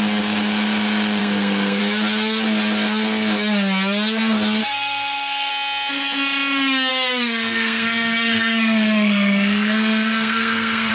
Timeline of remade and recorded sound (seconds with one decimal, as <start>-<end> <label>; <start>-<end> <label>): 0.0-1.2 recorded; 1.2-1.8 remade; 1.8-4.6 recorded; 4.6-5.5 remade; 5.5-6.9 recorded; 6.9-10.9 remade